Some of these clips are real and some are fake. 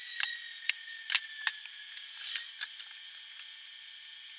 real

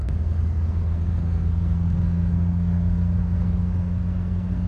fake